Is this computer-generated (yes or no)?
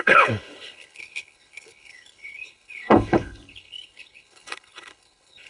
yes